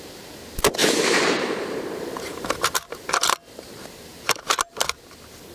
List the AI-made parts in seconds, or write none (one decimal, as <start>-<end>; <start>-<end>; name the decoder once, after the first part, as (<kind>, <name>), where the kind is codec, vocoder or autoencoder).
0.8-3.1 (vocoder, BigVGAN v2)